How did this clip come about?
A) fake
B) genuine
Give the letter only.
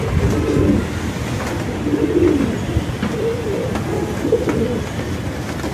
B